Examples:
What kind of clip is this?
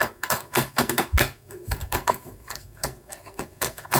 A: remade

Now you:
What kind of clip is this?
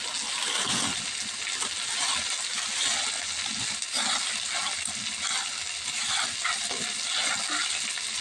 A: recorded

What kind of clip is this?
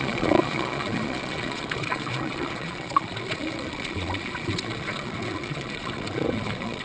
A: remade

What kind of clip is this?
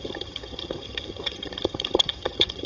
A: remade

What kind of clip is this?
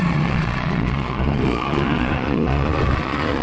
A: remade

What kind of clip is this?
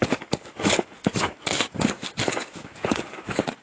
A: remade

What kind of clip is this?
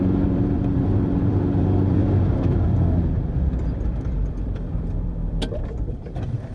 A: remade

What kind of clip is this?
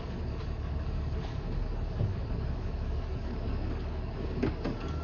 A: remade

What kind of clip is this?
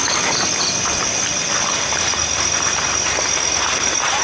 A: recorded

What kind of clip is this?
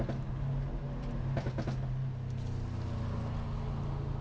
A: recorded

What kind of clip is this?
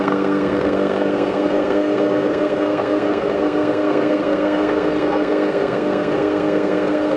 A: remade